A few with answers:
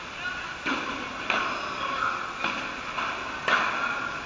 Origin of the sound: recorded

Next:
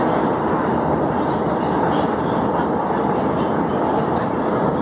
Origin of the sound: recorded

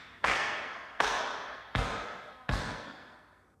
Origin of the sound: remade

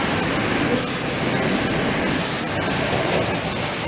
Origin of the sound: recorded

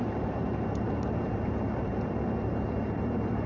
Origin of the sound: remade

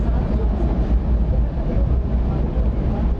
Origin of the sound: recorded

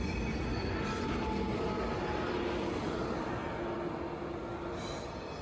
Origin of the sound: recorded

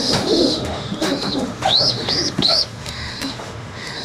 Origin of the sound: remade